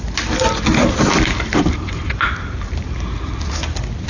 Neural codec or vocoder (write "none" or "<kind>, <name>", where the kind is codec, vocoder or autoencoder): none